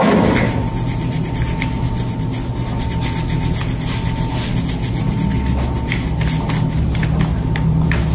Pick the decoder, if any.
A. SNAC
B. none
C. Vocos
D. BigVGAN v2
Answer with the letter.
B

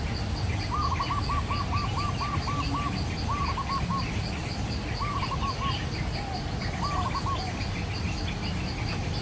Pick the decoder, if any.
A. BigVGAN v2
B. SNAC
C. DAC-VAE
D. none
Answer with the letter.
A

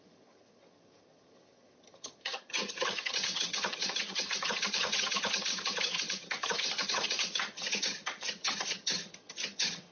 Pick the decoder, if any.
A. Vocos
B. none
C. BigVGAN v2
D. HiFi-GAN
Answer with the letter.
D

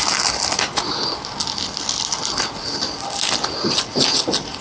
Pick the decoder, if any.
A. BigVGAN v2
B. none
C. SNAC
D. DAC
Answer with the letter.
B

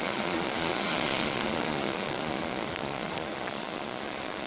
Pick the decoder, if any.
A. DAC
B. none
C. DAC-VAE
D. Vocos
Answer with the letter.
D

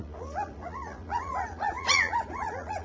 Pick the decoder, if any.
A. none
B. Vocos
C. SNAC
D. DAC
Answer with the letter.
B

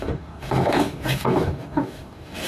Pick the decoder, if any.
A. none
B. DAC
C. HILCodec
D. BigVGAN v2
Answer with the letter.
B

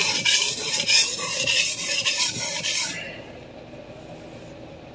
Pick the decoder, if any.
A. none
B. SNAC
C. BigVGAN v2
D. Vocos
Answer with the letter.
A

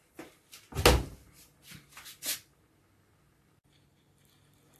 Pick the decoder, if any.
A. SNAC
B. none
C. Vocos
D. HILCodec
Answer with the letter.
B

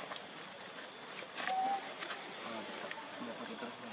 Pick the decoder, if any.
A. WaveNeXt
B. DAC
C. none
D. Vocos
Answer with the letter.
C